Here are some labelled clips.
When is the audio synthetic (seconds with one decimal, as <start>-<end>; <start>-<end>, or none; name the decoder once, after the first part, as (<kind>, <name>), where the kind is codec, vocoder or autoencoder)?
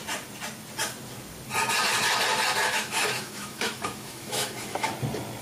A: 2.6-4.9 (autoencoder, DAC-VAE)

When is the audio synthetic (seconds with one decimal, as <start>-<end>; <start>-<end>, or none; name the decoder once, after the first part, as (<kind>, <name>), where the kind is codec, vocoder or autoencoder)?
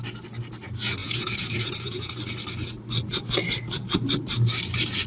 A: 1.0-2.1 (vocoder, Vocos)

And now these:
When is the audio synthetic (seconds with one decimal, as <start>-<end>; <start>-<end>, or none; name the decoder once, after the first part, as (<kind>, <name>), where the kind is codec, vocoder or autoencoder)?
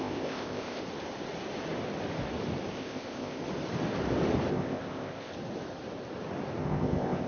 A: 0.0-0.8 (codec, ZipCodec); 2.7-3.4; 4.5-5.3; 6.6-7.3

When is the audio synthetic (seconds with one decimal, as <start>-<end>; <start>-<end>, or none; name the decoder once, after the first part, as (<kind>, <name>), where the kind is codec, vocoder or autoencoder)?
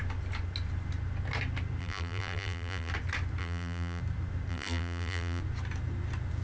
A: 1.8-2.9 (vocoder, BigVGAN v2); 3.4-4.0; 4.5-5.4